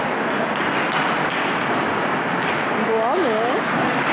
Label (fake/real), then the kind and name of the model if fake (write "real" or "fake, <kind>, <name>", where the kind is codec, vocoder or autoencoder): real